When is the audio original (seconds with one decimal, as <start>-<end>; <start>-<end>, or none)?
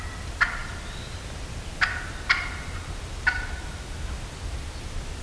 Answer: 0.0-5.2